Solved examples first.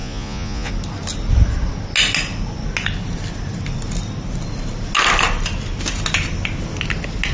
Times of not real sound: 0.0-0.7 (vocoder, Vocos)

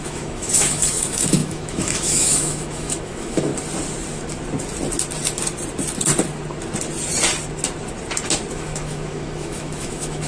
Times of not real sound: 0.0-3.5 (autoencoder, DAC-VAE); 8.5-10.3

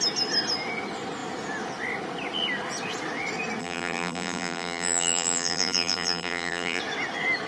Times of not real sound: 3.6-6.8 (vocoder, BigVGAN v2)

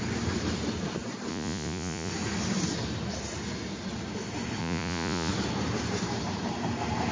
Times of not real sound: 1.3-2.1 (vocoder, Vocos); 4.6-5.3

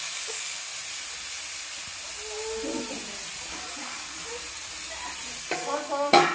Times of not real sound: 0.0-0.7 (codec, DAC); 3.5-4.2; 5.4-6.3

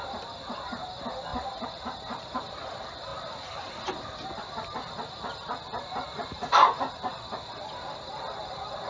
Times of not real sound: none

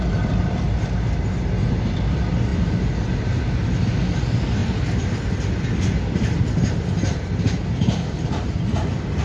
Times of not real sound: none